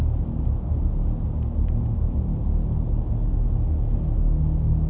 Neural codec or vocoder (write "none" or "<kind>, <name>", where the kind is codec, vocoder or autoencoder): none